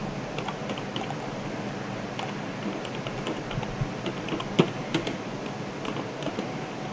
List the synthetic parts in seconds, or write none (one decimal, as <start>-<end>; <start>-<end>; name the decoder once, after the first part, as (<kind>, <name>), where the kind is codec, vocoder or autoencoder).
none